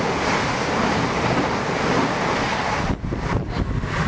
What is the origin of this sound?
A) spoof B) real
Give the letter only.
B